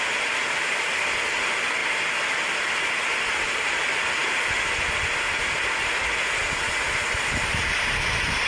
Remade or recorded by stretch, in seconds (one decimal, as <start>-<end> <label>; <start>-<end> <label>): 0.0-8.5 recorded